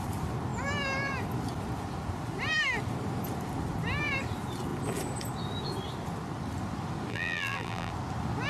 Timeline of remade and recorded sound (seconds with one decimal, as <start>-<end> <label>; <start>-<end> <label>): 0.0-7.1 recorded; 7.1-7.9 remade; 7.9-8.5 recorded